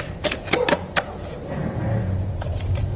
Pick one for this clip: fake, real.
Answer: fake